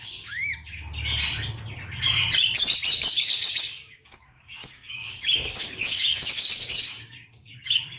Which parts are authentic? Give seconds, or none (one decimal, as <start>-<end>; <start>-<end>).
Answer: 0.5-2.9